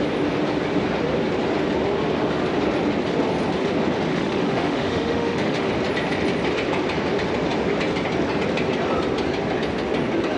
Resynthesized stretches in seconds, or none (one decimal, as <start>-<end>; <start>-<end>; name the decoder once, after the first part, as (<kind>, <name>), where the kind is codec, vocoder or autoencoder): 4.1-5.7 (autoencoder, DAC-VAE)

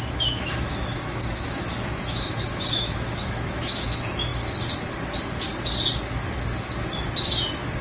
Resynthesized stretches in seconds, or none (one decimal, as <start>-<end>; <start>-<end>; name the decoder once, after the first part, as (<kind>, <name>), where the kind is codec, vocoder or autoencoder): 0.0-4.3 (autoencoder, DAC-VAE)